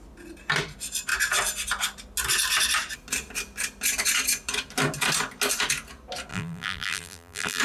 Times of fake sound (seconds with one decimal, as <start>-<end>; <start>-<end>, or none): 6.3-7.6